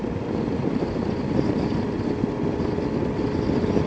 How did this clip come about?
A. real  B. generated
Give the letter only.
A